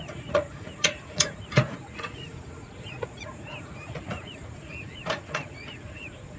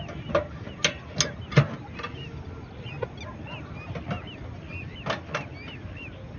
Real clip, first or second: second